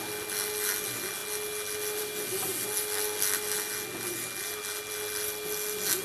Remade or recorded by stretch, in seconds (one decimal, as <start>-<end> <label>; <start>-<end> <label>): 0.0-6.0 recorded